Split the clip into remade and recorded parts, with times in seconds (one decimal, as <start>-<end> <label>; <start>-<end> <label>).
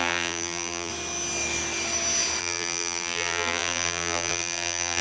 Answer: 0.0-0.9 remade; 0.9-2.4 recorded; 2.4-5.0 remade